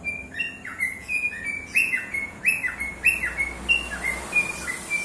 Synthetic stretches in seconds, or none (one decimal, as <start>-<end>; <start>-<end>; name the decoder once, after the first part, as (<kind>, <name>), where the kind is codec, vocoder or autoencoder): 0.7-2.4 (vocoder, Vocos)